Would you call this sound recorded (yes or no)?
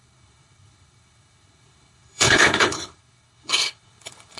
no